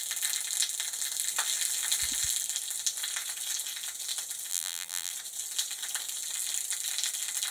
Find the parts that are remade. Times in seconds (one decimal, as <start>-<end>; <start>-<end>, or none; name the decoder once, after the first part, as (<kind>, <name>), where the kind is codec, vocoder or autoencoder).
4.5-5.1 (vocoder, BigVGAN v2)